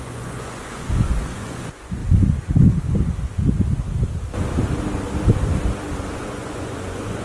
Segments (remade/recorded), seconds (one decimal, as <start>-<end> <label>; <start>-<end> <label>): 0.0-2.0 remade; 2.0-6.1 recorded; 6.1-7.2 remade